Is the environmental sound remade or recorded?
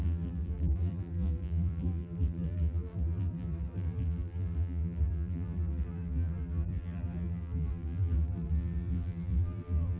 remade